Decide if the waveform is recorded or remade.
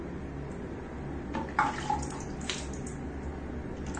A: recorded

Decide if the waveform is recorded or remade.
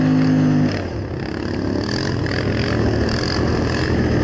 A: recorded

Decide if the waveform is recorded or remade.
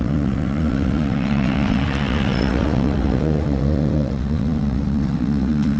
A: remade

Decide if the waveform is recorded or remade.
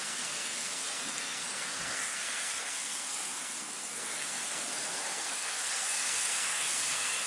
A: remade